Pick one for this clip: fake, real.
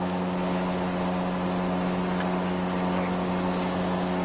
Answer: real